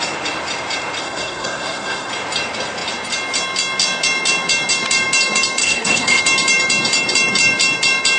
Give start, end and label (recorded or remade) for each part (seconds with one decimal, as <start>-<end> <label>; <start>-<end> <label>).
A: 0.0-1.0 recorded; 1.0-2.1 remade; 2.1-5.6 recorded; 5.6-6.2 remade; 6.2-8.2 recorded